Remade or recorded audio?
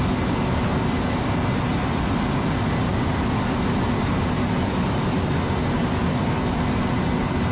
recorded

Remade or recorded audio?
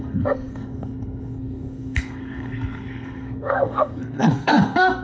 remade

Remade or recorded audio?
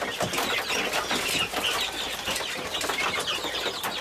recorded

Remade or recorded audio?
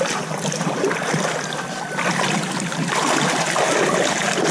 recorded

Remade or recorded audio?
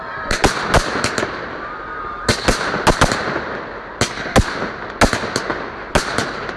recorded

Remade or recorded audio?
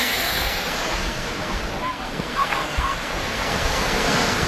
remade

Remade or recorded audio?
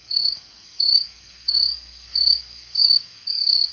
remade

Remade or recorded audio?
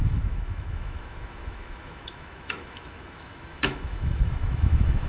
remade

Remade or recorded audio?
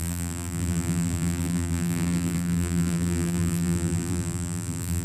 remade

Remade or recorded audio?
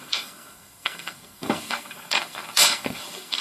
remade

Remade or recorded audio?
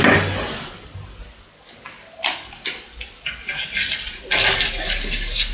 recorded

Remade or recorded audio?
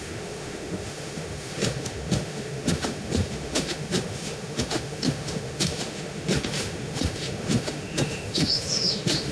remade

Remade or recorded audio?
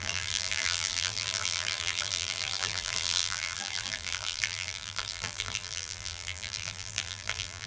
remade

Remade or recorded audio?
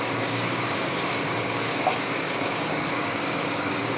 remade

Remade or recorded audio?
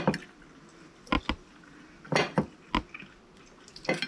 recorded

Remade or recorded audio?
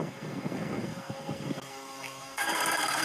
remade